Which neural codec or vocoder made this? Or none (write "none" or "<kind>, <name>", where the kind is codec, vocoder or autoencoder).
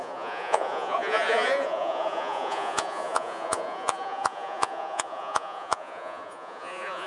vocoder, Vocos